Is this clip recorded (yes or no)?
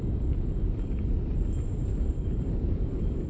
yes